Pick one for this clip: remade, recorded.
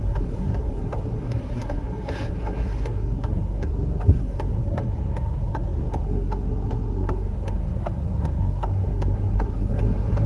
remade